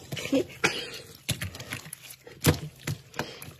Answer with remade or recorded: recorded